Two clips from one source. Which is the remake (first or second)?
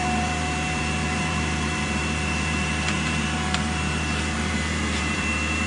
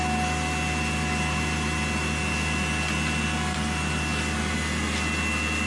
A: first